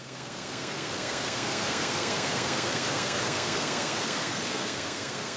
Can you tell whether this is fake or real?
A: fake